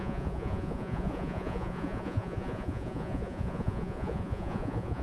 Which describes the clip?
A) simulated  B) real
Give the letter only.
A